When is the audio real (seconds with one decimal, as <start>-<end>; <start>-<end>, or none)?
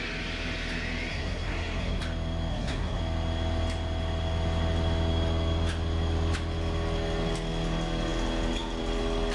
0.0-1.1; 2.0-2.5; 3.0-9.3